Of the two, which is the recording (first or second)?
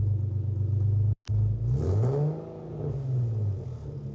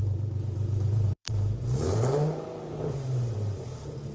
first